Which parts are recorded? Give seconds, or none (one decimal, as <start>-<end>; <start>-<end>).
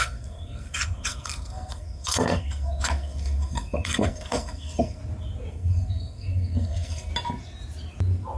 5.0-5.5; 7.1-8.4